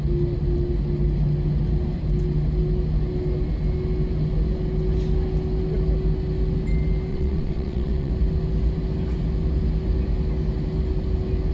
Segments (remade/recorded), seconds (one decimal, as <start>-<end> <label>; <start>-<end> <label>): 0.0-7.1 recorded; 7.1-8.1 remade; 8.1-11.5 recorded